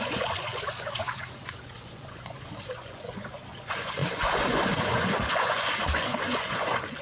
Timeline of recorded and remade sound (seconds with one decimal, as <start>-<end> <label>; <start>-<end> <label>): 0.0-7.0 remade